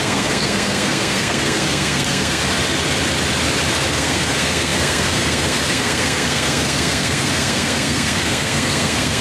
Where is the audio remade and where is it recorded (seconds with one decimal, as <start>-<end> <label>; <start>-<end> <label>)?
0.0-2.4 remade; 2.4-3.9 recorded; 3.9-9.2 remade